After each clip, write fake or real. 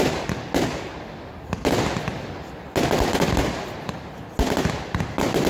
real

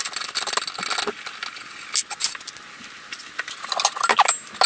real